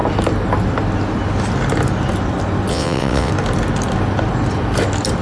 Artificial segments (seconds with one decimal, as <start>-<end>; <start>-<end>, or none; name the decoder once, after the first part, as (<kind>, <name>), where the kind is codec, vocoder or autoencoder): 2.7-3.3 (vocoder, WaveNeXt)